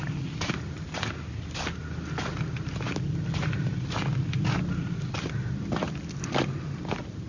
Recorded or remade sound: recorded